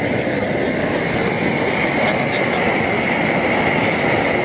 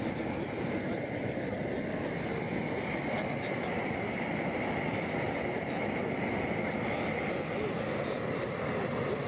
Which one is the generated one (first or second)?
second